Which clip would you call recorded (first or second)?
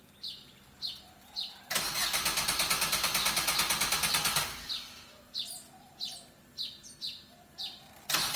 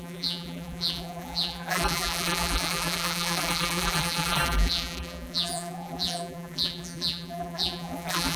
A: first